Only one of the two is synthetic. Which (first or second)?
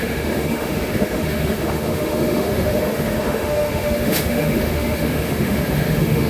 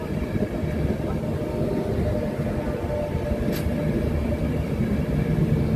first